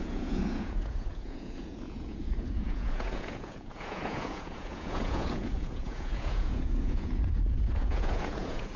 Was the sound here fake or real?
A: fake